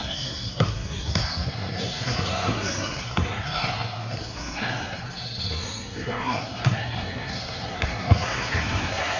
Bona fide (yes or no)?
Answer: no